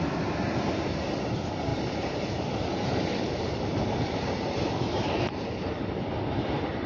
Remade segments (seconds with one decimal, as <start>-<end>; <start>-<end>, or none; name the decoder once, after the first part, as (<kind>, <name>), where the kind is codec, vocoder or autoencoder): 1.7-5.8 (vocoder, BigVGAN v2)